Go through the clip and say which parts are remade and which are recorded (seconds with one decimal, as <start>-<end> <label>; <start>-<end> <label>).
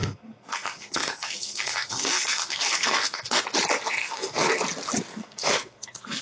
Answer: 0.0-3.4 remade; 3.4-4.0 recorded; 4.0-4.5 remade; 4.5-5.1 recorded; 5.1-6.2 remade